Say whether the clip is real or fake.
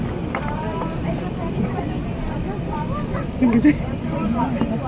real